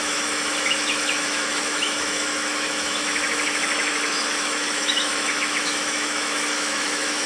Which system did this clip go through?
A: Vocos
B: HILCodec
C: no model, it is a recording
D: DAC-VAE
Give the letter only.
D